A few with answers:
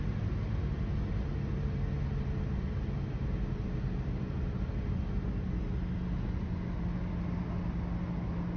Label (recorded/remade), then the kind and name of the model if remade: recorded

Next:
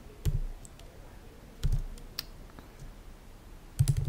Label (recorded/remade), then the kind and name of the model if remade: recorded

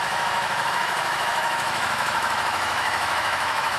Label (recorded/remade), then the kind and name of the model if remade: remade, autoencoder, DAC-VAE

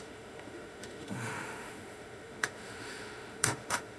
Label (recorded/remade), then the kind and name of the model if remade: remade, autoencoder, DAC-VAE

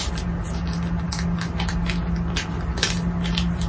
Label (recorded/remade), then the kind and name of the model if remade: recorded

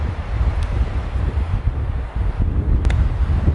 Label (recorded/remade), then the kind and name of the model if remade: recorded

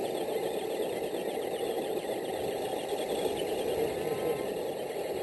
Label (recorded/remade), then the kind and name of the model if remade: recorded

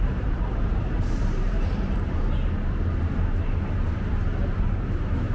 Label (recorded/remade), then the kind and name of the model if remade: remade, vocoder, BigVGAN v2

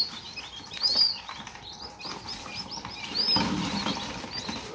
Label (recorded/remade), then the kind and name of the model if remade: recorded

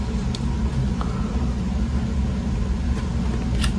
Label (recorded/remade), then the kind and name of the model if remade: recorded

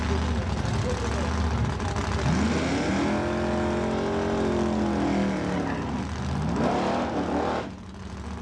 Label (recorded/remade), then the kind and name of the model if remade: recorded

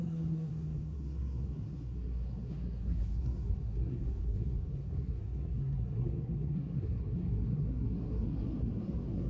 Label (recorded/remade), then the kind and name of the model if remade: remade, codec, SNAC